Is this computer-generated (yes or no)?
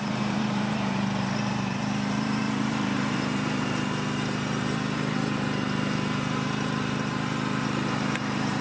yes